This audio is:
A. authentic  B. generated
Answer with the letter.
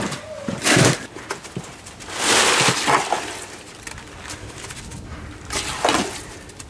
A